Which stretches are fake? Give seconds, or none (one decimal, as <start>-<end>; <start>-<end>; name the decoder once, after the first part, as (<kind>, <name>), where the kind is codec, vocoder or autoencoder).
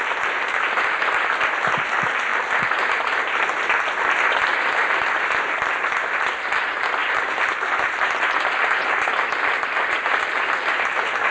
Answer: none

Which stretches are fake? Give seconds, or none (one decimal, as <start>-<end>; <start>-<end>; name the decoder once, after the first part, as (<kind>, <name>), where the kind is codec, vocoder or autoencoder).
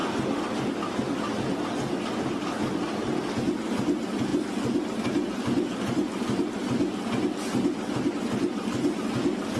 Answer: none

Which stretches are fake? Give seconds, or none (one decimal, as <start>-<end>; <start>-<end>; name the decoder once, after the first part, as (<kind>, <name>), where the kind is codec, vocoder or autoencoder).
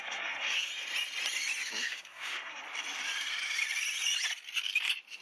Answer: 0.0-0.7 (codec, SNAC); 1.7-2.6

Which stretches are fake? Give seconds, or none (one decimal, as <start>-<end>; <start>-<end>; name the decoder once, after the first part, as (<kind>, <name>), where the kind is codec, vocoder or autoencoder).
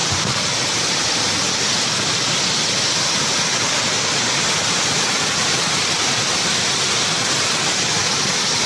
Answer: none